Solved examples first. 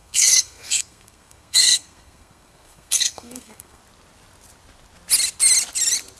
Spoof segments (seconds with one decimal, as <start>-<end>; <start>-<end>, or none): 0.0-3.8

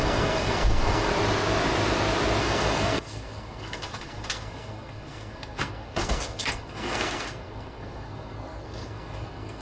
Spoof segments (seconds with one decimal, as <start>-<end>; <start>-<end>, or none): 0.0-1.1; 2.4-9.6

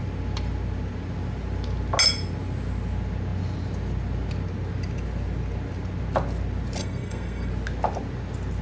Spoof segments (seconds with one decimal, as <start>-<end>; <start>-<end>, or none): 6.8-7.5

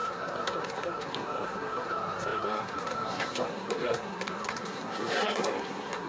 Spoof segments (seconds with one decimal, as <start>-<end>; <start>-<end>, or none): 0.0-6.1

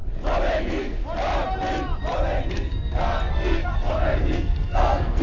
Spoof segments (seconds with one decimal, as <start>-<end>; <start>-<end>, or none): 0.6-1.0; 2.5-5.2

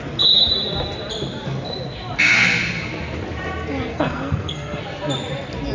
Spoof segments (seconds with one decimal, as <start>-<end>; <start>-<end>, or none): 3.9-4.8